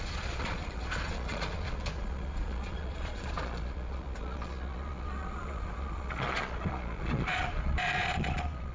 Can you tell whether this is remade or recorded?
remade